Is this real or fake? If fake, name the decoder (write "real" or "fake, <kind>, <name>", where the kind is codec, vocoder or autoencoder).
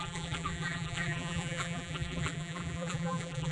fake, vocoder, BigVGAN v2